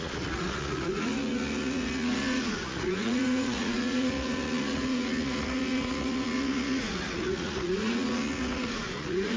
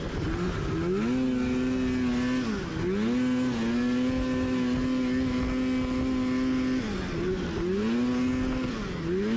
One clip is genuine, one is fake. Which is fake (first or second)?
first